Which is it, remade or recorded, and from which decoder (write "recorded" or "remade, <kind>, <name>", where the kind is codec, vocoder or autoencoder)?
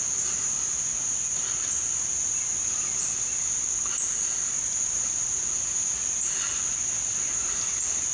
recorded